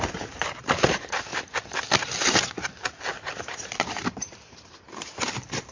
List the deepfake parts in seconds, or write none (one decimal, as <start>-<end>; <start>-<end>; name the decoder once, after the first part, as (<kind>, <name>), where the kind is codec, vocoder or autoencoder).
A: 0.0-1.3 (vocoder, BigVGAN v2); 3.1-5.7